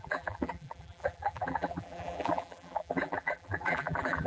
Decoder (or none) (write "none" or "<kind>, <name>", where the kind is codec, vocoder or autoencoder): vocoder, BigVGAN v2